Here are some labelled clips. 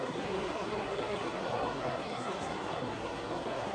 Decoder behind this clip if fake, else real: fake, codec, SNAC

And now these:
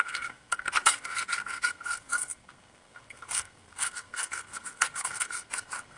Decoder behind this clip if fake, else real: fake, codec, SNAC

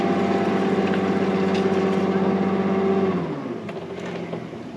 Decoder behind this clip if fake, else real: real